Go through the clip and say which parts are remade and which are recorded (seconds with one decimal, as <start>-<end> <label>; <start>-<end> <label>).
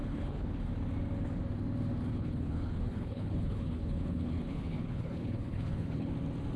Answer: 0.0-0.7 remade; 0.7-2.1 recorded; 2.1-6.1 remade; 6.1-6.6 recorded